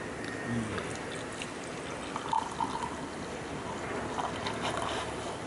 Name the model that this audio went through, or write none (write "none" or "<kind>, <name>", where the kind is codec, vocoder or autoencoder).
none